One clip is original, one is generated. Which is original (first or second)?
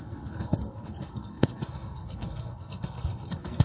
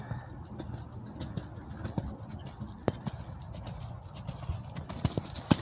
second